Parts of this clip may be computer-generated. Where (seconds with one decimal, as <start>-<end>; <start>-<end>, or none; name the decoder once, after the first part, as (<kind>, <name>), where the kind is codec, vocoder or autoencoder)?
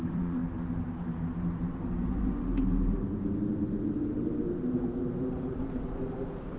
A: 0.0-0.4 (vocoder, Vocos); 2.0-2.4